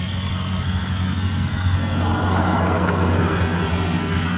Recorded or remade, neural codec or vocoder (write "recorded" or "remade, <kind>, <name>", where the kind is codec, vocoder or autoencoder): remade, codec, SNAC